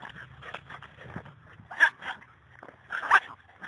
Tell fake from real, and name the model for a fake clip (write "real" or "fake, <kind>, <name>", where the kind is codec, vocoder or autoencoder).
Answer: real